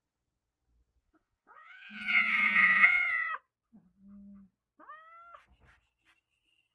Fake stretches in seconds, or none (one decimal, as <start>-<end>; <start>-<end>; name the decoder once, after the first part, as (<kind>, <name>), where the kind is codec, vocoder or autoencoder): 1.0-3.3 (vocoder, Vocos)